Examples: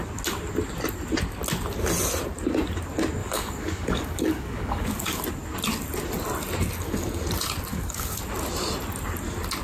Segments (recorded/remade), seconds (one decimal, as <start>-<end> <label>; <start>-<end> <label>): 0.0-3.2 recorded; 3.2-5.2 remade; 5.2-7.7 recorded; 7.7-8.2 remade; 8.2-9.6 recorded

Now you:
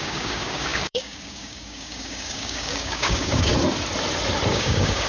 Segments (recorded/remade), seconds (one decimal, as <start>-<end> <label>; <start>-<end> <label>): 0.0-3.5 remade; 3.5-4.5 recorded; 4.5-5.1 remade

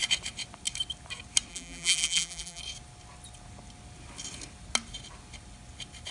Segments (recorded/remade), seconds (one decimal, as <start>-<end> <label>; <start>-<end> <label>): 0.0-1.5 recorded; 1.5-2.6 remade; 2.6-6.1 recorded